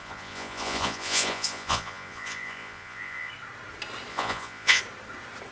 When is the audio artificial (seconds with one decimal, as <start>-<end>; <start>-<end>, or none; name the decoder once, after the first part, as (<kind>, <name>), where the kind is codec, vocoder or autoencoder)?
0.0-3.3 (vocoder, Vocos); 4.1-4.8